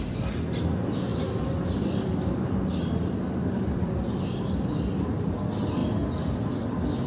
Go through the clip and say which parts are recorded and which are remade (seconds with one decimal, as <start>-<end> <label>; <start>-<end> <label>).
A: 0.0-7.1 recorded